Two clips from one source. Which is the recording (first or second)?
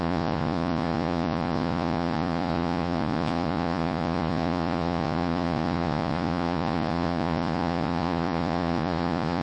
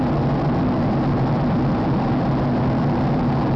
second